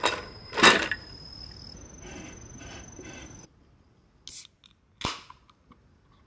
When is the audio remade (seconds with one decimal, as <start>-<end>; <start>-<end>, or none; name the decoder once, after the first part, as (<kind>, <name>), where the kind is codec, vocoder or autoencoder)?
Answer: none